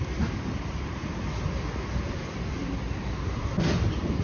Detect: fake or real fake